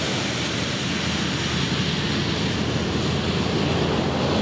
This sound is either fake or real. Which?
real